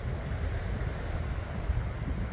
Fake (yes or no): no